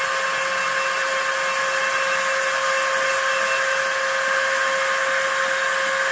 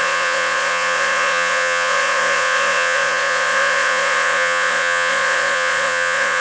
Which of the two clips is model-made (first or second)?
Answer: second